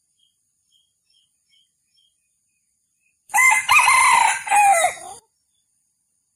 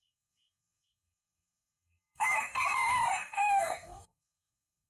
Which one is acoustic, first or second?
first